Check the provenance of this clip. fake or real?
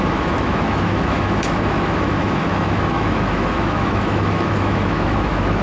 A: fake